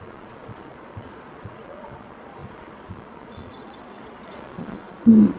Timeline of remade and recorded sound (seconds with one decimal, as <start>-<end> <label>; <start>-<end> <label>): 0.0-5.4 remade